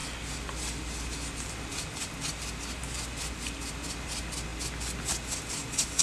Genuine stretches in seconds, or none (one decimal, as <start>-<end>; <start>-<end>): 0.0-6.0

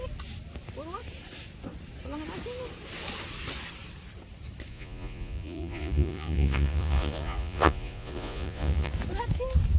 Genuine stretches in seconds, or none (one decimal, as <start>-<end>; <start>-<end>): 0.0-4.7; 8.9-9.8

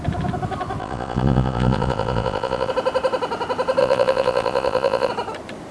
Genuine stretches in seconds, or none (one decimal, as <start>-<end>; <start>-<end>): 0.0-0.8; 2.7-3.8; 5.1-5.7